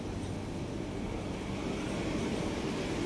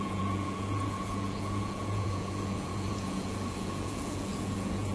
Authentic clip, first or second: first